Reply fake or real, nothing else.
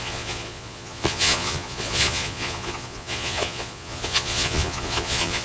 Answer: fake